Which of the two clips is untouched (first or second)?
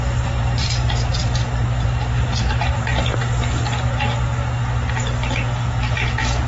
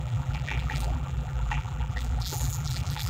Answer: first